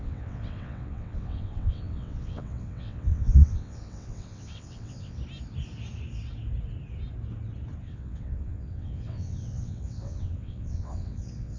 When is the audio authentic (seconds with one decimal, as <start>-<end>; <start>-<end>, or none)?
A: 5.2-7.8